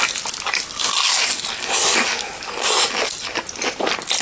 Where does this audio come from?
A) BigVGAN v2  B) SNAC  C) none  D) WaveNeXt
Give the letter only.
C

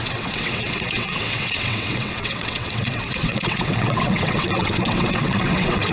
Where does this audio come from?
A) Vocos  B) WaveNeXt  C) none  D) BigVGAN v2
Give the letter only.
B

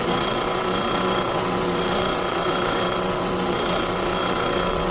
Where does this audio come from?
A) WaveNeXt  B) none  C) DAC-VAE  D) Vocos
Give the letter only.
A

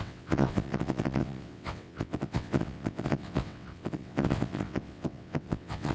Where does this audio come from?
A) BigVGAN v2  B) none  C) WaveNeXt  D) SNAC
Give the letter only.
C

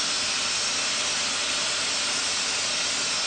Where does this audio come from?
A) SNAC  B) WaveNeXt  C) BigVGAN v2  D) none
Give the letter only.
D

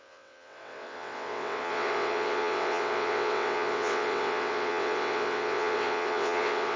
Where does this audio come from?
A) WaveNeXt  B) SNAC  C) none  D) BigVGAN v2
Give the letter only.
A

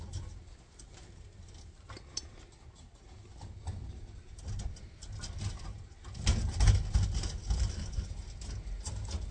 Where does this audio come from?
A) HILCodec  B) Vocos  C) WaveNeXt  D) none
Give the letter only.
D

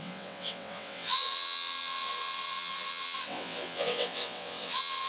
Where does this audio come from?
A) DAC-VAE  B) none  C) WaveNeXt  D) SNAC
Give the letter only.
C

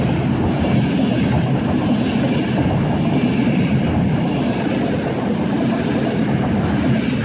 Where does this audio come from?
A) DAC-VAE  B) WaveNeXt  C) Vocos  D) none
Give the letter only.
D